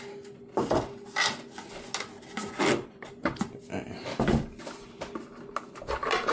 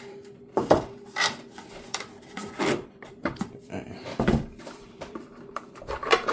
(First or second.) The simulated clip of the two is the second